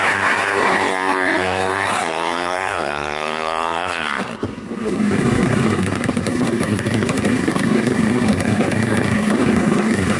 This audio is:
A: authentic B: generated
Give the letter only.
B